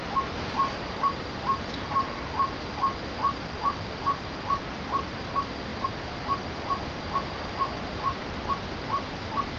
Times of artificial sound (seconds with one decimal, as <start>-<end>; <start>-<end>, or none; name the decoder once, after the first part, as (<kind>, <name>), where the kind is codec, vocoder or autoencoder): none